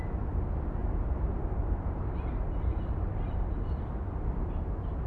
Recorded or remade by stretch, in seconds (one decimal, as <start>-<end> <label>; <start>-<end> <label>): 0.0-0.8 recorded; 0.8-3.9 remade; 3.9-5.1 recorded